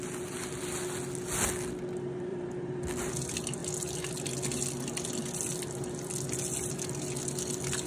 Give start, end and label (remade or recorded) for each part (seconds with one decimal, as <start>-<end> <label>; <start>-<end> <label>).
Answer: 0.0-2.3 recorded; 2.3-3.1 remade; 3.1-7.9 recorded